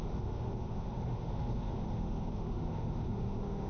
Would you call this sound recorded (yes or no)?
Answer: no